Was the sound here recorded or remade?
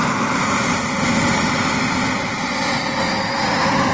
recorded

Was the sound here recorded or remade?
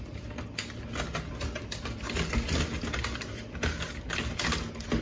recorded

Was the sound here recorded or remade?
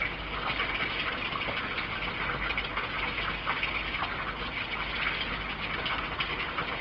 recorded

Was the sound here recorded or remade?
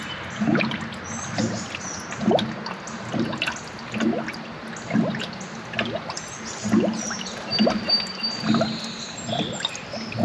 recorded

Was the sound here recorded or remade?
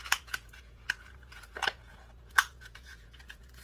remade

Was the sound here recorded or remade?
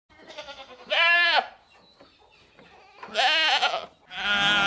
recorded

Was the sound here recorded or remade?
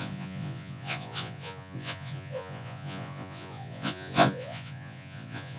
remade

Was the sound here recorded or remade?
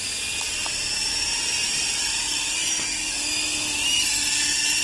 recorded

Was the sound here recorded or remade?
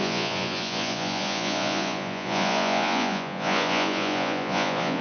remade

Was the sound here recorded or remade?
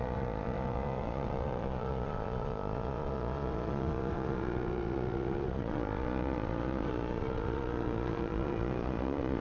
remade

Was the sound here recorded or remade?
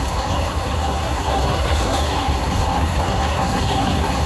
remade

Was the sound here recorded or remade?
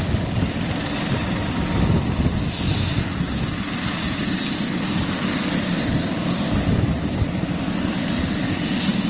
recorded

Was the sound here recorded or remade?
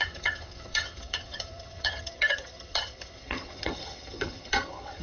remade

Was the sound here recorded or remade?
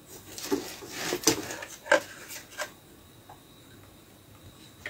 recorded